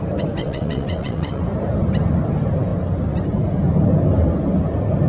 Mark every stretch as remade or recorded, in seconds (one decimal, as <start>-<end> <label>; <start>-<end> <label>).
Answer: 0.0-0.4 recorded; 0.4-1.4 remade; 1.4-5.1 recorded